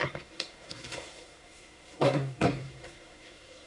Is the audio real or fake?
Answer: fake